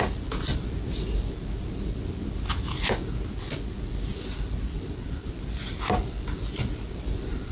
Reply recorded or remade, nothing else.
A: recorded